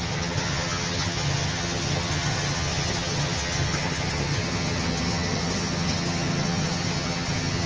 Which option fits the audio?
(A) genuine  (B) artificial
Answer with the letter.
B